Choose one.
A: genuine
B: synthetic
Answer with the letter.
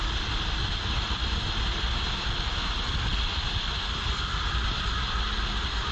A